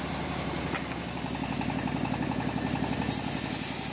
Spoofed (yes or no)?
no